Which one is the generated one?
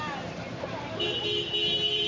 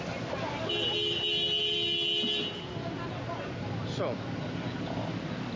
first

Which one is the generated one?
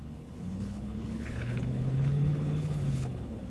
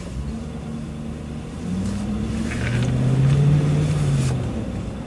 first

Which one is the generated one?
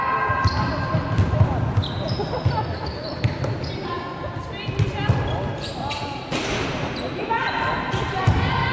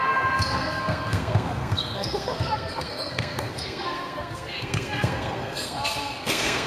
second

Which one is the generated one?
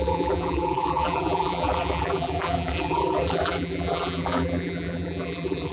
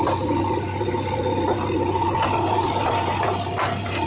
first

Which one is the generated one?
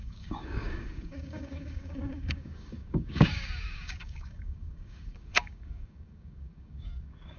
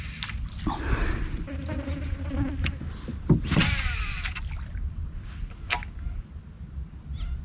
first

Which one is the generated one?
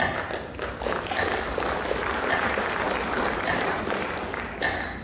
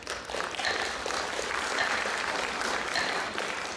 second